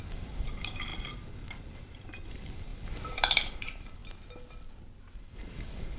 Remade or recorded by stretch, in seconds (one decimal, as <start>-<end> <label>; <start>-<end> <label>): 0.0-4.0 remade; 4.0-5.2 recorded; 5.2-6.0 remade

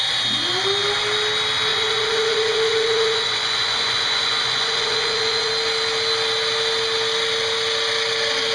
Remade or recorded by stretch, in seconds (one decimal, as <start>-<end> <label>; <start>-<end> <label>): 0.0-1.7 recorded; 1.7-5.5 remade; 5.5-8.5 recorded

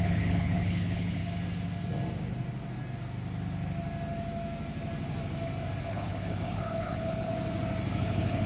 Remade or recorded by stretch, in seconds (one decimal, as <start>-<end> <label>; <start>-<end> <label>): 0.0-1.2 remade; 1.2-5.8 recorded; 5.8-7.3 remade; 7.3-8.0 recorded; 8.0-8.5 remade

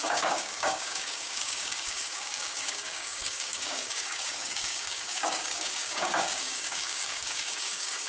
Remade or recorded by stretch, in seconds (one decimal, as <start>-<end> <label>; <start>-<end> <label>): 0.0-8.1 remade

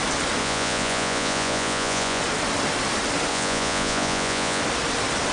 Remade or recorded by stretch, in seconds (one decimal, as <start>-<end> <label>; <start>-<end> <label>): 0.0-0.4 recorded; 0.4-2.2 remade; 2.2-3.3 recorded; 3.3-4.6 remade; 4.6-5.3 recorded

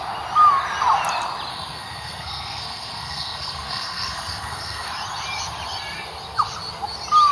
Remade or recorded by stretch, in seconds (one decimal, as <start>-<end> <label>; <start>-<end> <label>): 0.0-1.5 recorded; 1.5-4.9 remade; 4.9-7.3 recorded

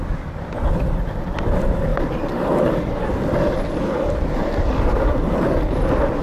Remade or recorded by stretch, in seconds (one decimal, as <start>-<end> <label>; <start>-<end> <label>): 0.0-6.2 recorded

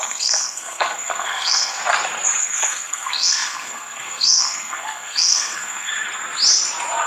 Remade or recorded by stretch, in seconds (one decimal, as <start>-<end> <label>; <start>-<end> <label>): 0.0-1.8 remade; 1.8-2.4 recorded; 2.4-5.9 remade; 5.9-7.1 recorded